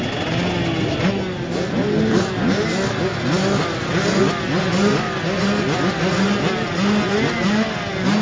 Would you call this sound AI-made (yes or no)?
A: no